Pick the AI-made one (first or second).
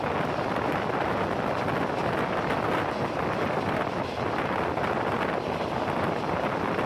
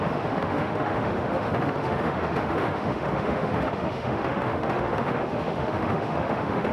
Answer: second